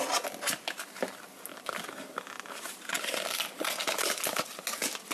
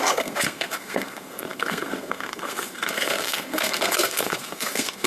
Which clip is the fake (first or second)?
second